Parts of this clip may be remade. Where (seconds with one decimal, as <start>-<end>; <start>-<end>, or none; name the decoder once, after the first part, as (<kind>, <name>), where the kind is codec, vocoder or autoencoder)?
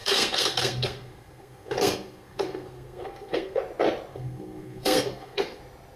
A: 0.0-3.6 (codec, SNAC); 4.1-5.6